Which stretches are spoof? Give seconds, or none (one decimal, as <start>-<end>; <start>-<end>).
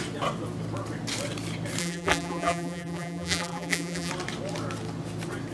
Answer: 1.8-4.1